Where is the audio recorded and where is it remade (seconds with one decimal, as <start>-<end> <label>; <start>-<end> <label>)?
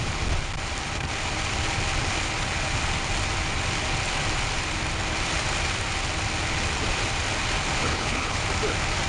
0.0-7.8 recorded; 7.8-8.4 remade; 8.4-9.1 recorded